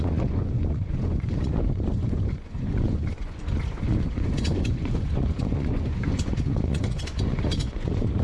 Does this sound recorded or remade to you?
remade